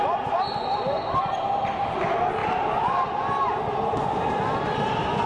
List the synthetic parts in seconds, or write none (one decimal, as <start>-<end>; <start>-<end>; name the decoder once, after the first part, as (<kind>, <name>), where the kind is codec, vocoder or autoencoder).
none